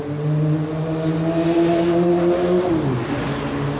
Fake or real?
real